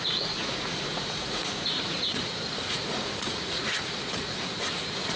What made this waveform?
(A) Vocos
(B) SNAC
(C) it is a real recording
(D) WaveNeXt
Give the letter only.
A